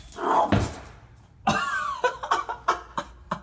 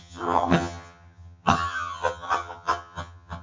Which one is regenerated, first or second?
second